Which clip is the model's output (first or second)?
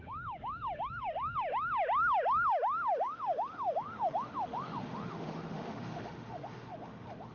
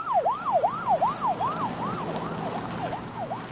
first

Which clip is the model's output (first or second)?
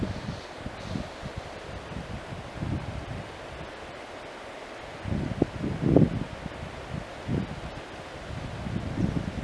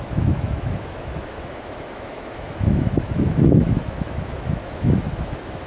second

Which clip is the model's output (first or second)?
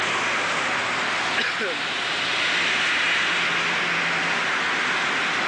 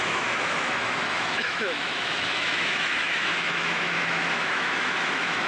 second